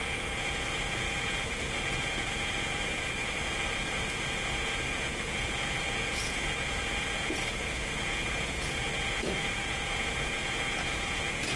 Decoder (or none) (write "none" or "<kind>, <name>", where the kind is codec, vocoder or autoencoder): vocoder, Vocos